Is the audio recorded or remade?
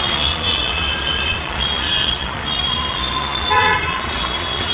remade